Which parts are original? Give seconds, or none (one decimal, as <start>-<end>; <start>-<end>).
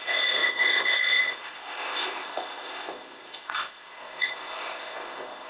none